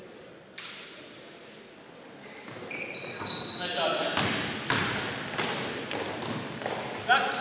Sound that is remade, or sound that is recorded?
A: recorded